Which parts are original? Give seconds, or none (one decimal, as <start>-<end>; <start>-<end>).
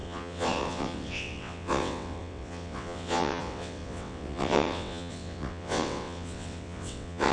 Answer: none